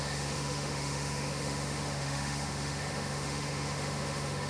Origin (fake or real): fake